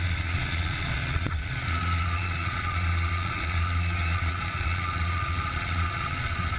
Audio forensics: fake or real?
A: fake